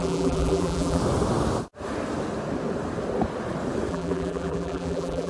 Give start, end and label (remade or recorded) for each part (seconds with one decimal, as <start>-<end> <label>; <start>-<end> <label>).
0.0-1.0 remade; 1.0-3.9 recorded; 3.9-5.3 remade